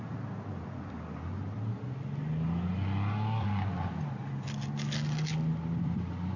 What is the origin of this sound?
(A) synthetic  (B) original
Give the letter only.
B